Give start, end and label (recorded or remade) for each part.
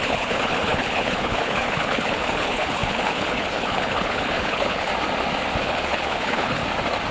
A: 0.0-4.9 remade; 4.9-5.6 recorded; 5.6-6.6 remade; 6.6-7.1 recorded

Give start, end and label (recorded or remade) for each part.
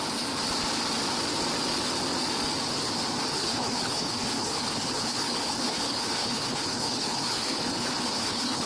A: 0.0-3.3 recorded; 3.3-8.7 remade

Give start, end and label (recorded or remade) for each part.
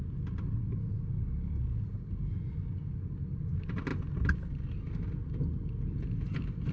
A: 0.0-6.7 recorded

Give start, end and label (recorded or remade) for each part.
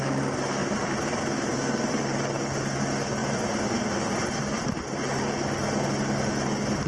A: 0.0-0.6 recorded; 0.6-1.2 remade; 1.2-3.2 recorded; 3.2-5.2 remade; 5.2-6.9 recorded